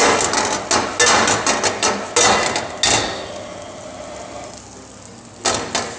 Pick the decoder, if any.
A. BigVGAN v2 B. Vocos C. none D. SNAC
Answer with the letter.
C